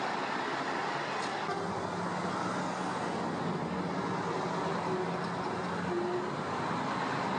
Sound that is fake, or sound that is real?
real